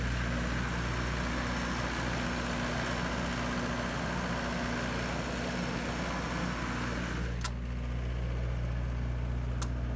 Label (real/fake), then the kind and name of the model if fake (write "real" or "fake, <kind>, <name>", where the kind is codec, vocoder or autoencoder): real